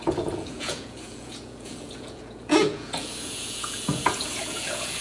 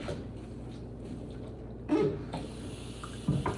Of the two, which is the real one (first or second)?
second